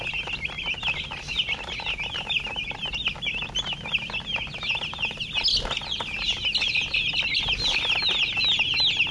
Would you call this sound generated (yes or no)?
no